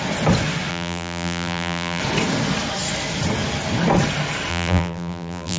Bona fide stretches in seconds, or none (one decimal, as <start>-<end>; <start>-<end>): 0.0-0.7; 2.0-4.5